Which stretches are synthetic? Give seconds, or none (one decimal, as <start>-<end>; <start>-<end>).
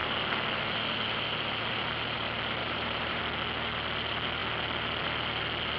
2.6-3.2